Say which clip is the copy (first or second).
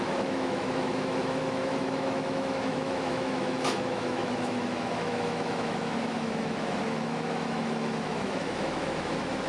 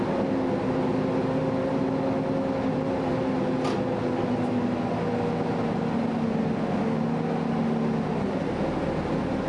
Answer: first